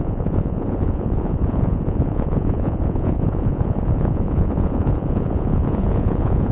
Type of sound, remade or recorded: remade